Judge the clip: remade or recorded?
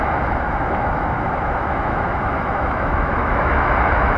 remade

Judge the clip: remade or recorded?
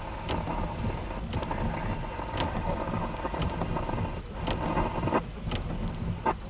recorded